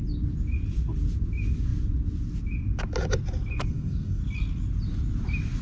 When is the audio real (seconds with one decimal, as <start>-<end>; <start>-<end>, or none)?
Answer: 0.0-3.7; 4.2-5.6